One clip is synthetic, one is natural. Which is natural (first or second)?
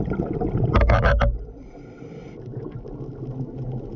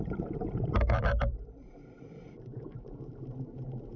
first